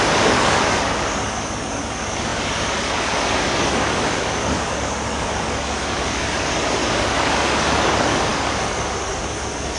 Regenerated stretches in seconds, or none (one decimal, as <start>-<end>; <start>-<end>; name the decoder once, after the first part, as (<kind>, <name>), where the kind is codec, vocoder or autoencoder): 0.0-9.8 (codec, DAC)